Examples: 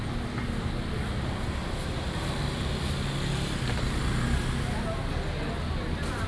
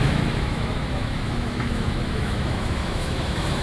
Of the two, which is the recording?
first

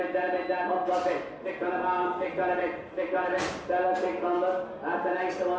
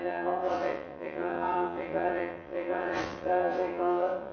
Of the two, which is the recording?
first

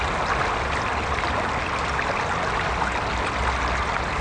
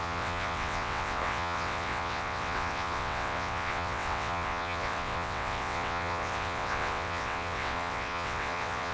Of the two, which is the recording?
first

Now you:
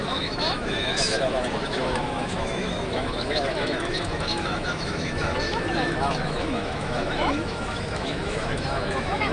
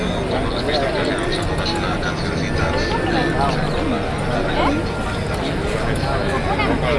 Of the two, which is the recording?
second